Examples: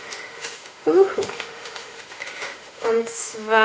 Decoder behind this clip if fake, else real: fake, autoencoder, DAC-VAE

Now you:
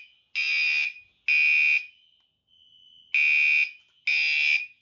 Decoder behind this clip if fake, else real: real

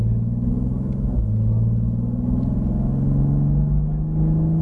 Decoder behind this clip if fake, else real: real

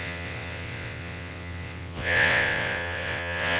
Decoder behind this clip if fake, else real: fake, vocoder, WaveNeXt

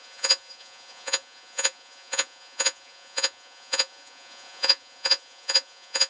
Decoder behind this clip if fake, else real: fake, vocoder, Vocos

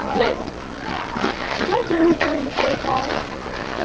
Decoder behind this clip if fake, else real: fake, vocoder, Vocos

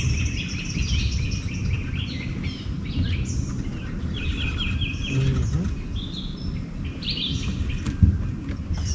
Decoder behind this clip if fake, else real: real